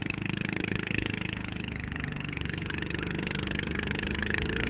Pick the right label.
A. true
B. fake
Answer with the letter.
B